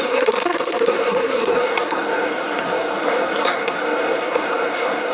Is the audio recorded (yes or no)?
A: no